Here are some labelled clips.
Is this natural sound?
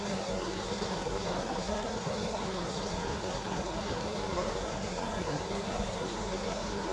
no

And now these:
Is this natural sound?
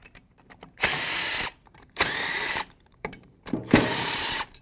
no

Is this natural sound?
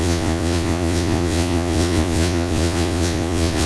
no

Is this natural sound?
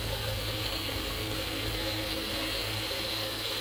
no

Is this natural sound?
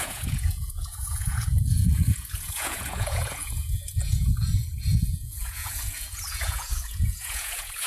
no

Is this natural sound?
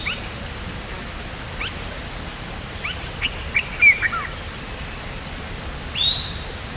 yes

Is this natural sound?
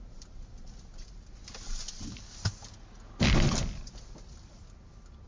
yes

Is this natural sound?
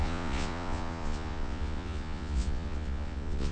no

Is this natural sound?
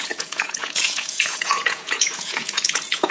no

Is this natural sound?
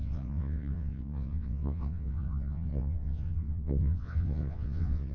no